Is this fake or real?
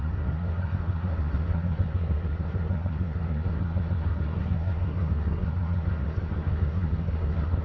fake